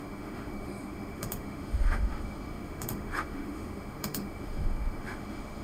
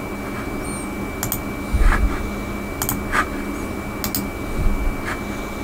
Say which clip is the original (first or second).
second